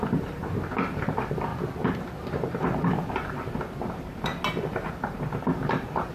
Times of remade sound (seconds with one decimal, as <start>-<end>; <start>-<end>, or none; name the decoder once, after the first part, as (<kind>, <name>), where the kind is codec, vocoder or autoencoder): 0.0-1.5 (vocoder, BigVGAN v2); 2.2-4.3; 4.9-6.1